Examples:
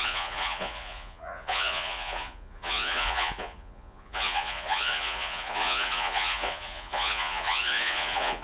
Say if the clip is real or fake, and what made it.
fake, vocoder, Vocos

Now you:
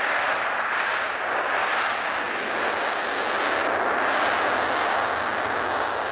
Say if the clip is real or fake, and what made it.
real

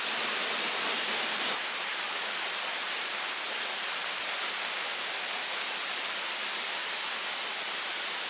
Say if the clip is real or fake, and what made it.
real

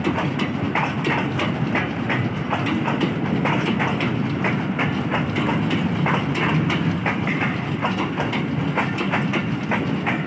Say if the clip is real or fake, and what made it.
real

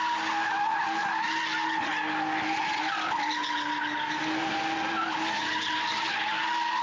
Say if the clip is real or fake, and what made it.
real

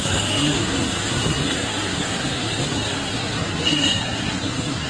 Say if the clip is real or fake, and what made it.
fake, codec, SNAC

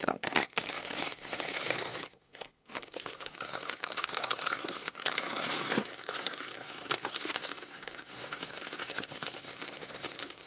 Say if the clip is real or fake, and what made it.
fake, codec, SNAC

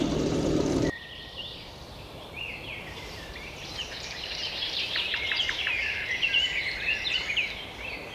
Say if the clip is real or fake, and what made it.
fake, vocoder, BigVGAN v2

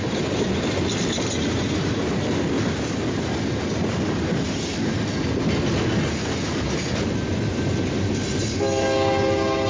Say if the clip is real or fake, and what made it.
real